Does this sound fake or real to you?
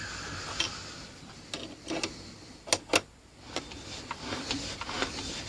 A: real